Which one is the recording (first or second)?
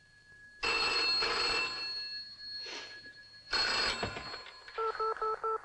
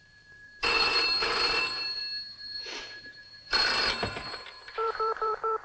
first